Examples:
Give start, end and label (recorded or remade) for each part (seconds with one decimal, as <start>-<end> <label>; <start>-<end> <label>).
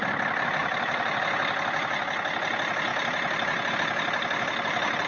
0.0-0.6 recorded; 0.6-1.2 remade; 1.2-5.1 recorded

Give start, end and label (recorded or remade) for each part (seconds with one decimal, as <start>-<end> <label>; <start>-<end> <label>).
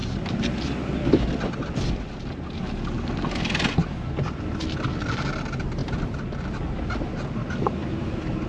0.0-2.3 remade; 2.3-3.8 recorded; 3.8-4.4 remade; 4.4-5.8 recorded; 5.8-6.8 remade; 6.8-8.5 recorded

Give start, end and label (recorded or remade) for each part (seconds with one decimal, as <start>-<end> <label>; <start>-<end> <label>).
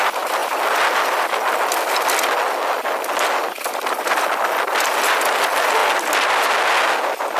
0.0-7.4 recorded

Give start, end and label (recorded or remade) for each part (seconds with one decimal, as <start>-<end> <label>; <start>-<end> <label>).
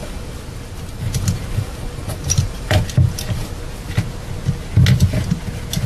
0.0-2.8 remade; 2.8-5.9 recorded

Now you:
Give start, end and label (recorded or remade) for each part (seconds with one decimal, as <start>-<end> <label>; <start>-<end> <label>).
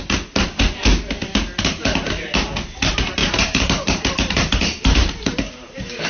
0.0-3.2 recorded; 3.2-6.1 remade